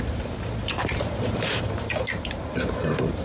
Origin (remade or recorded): remade